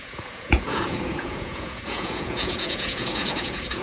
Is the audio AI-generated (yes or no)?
yes